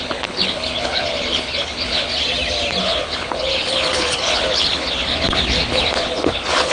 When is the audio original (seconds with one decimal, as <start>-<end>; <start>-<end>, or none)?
2.1-2.8